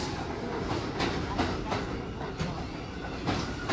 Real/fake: real